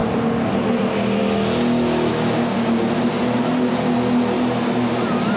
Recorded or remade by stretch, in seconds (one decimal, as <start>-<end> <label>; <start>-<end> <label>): 0.0-2.1 recorded; 2.1-2.9 remade; 2.9-5.4 recorded

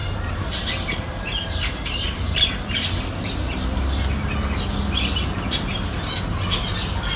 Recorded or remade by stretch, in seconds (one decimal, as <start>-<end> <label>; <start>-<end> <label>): 0.0-2.5 remade; 2.5-7.2 recorded

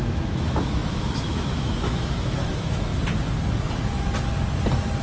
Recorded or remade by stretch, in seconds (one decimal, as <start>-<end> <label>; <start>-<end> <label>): 0.0-2.9 remade; 2.9-5.0 recorded